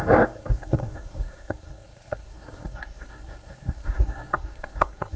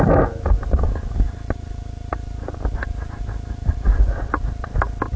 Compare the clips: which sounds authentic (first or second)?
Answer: second